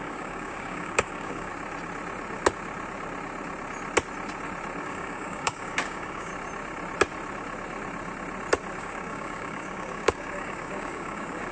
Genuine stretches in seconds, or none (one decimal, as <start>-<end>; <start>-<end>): 1.5-4.8; 6.3-8.8